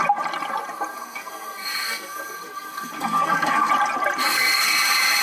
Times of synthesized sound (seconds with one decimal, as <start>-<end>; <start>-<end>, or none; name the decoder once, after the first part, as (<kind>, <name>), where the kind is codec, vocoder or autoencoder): 0.9-3.7 (codec, SNAC); 4.2-4.8